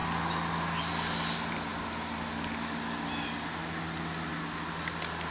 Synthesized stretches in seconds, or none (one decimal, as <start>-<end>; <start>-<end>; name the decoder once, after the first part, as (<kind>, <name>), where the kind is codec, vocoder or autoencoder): none